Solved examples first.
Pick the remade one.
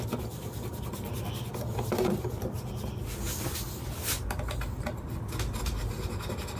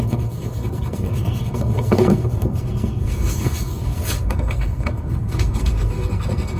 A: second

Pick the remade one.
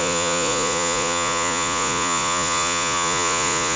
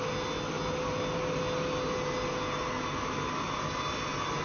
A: first